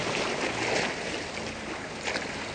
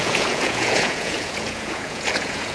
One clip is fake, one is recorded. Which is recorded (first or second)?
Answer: first